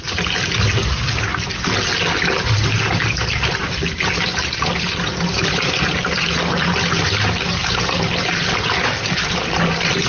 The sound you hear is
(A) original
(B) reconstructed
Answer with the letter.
A